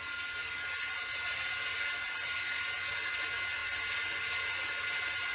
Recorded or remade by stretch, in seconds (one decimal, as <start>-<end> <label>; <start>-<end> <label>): 0.0-5.3 recorded